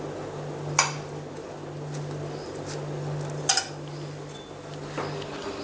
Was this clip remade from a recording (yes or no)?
no